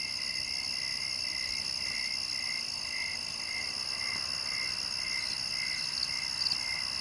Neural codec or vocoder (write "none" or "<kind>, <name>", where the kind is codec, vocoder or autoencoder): none